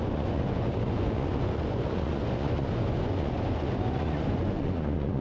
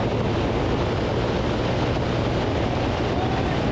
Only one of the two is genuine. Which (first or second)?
second